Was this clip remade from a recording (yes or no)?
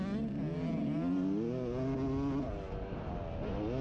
no